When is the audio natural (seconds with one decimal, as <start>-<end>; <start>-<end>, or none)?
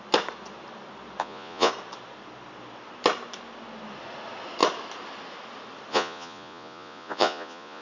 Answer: 0.0-1.2; 1.7-5.9